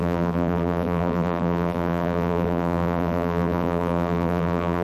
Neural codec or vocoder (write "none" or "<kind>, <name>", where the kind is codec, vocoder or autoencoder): vocoder, BigVGAN v2